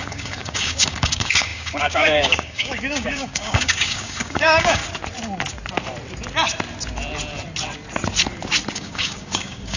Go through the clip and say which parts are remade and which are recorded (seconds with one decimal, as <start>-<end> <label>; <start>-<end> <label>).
0.0-4.8 remade; 4.8-8.7 recorded; 8.7-9.8 remade